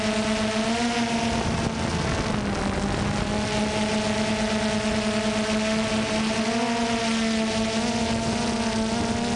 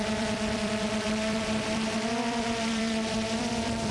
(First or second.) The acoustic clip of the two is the first